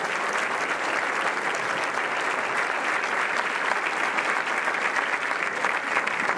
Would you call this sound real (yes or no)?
yes